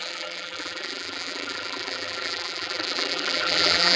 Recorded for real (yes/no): no